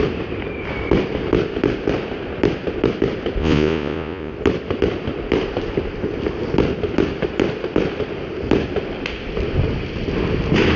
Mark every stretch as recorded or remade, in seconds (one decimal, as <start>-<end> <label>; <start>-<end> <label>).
0.0-3.4 recorded; 3.4-4.3 remade; 4.3-10.8 recorded